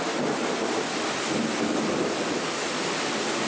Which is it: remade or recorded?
remade